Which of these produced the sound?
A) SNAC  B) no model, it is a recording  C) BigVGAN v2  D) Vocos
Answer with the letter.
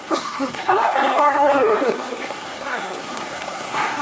A